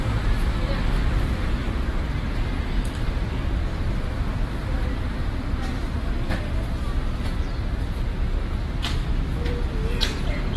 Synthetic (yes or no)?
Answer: no